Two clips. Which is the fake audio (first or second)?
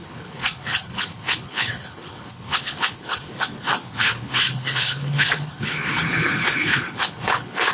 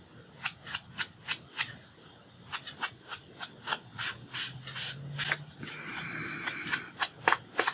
first